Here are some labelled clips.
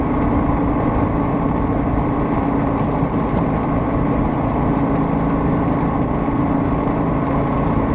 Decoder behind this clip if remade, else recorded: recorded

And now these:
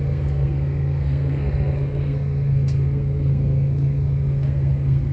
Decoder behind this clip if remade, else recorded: remade, codec, SNAC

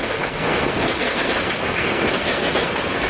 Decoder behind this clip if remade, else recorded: remade, codec, SNAC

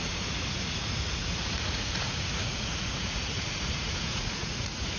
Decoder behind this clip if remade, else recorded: remade, vocoder, Vocos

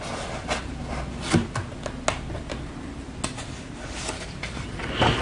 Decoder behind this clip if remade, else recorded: recorded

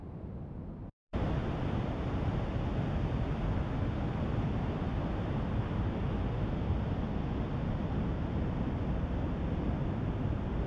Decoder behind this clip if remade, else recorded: recorded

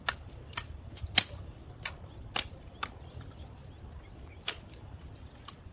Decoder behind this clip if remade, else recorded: recorded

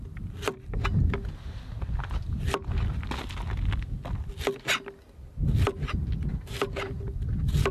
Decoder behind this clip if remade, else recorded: recorded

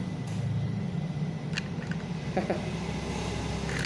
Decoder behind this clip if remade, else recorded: recorded